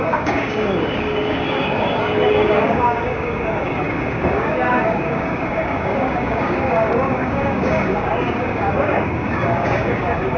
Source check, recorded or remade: remade